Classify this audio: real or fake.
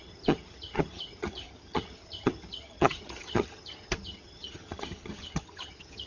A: fake